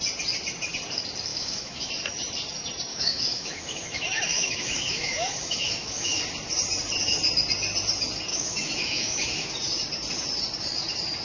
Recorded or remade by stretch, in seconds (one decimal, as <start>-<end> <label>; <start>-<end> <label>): 0.0-1.3 recorded; 1.3-1.9 remade; 1.9-2.9 recorded; 2.9-6.2 remade; 6.2-8.3 recorded; 8.3-9.5 remade; 9.5-11.2 recorded